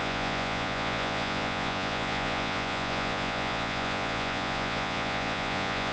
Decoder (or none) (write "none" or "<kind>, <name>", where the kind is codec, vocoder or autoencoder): vocoder, Vocos